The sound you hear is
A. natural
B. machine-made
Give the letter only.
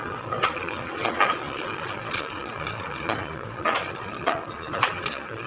B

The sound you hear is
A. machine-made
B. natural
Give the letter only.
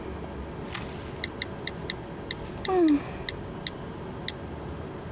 B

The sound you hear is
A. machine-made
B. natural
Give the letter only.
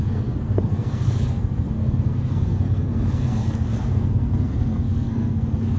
A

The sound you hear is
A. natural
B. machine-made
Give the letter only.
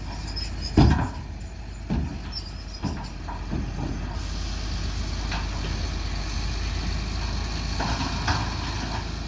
A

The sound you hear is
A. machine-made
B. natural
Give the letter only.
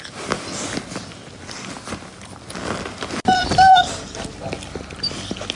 B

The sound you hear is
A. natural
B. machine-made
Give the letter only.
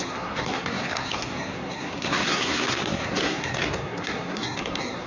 B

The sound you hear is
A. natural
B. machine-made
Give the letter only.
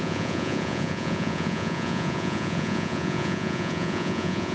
B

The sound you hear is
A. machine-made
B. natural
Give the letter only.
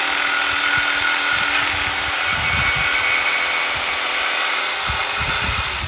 B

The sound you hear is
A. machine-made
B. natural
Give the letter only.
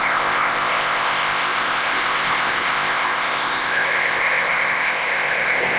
A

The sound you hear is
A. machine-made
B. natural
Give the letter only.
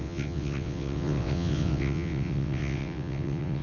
A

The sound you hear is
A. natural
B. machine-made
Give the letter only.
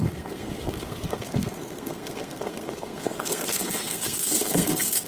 B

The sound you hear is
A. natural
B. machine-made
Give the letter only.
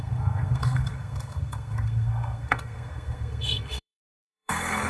B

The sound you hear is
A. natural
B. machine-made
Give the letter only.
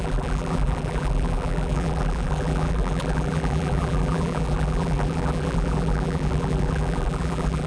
B